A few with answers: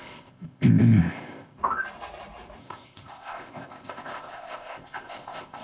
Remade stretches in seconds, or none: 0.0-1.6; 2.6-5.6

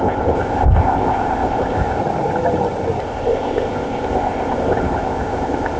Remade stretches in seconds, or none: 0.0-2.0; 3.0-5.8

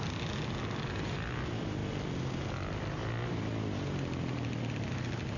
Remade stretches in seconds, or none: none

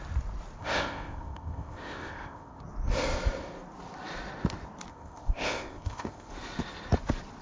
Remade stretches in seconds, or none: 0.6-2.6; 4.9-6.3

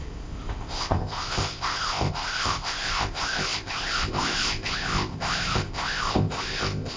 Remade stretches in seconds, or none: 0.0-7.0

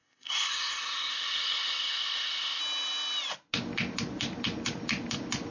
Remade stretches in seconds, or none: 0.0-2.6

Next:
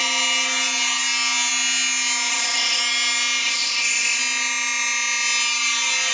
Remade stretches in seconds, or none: 2.3-2.8; 3.4-4.2

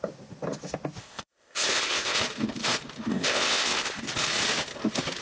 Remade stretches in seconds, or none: 1.0-2.2; 3.1-4.0